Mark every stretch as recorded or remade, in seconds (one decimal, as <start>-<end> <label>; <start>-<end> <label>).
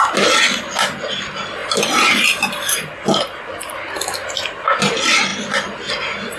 0.0-6.4 recorded